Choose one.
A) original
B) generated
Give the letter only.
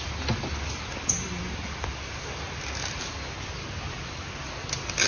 A